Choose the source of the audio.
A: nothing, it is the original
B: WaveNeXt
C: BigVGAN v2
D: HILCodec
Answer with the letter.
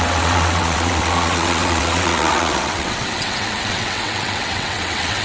B